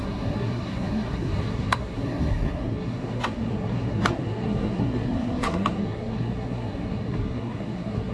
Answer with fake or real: fake